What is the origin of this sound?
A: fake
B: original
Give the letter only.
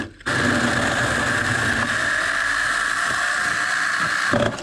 B